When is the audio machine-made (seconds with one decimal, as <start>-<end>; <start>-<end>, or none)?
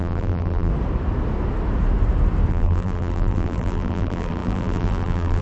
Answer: 0.0-0.7; 2.5-5.4